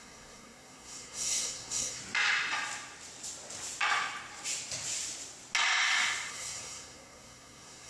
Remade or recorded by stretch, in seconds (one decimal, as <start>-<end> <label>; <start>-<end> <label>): 0.0-2.0 remade; 2.0-6.3 recorded; 6.3-7.9 remade